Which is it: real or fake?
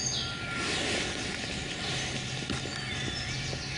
real